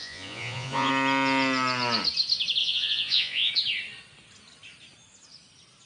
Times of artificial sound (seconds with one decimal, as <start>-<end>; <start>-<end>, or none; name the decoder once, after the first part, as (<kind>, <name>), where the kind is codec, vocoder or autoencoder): 0.0-0.9 (vocoder, Vocos); 2.6-3.5